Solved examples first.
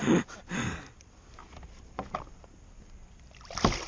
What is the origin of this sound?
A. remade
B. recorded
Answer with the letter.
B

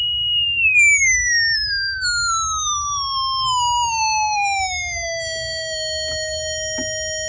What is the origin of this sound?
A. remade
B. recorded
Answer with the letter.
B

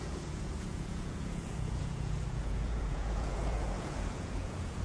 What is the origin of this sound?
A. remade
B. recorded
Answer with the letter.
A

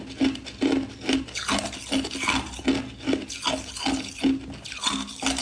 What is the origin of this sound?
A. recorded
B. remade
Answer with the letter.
A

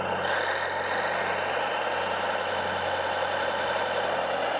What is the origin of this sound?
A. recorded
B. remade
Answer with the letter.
A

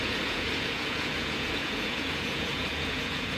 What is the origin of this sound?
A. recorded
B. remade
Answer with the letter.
B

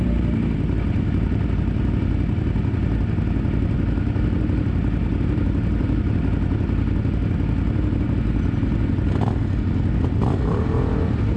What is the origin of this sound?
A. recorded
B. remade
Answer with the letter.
A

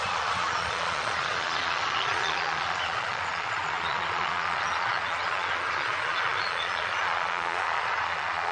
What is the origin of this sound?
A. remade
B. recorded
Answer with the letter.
A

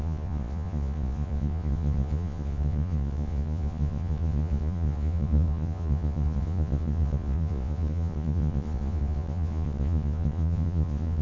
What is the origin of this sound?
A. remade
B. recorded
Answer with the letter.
A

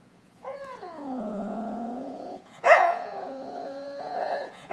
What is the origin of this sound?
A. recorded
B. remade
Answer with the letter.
B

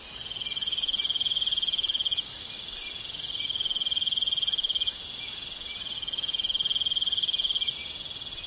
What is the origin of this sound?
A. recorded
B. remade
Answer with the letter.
A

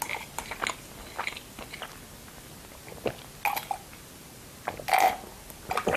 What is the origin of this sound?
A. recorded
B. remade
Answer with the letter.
A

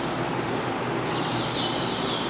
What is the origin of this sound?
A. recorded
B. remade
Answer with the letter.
A